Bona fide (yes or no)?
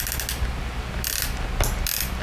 yes